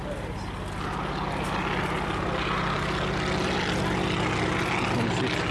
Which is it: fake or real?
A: real